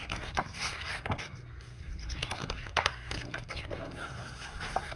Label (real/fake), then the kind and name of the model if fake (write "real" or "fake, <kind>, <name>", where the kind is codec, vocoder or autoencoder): fake, codec, SNAC